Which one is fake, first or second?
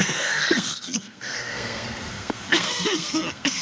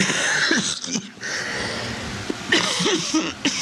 first